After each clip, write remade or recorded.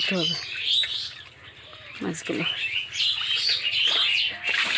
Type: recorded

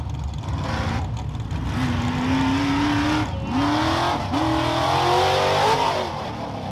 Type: recorded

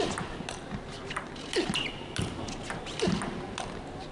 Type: recorded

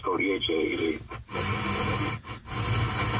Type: recorded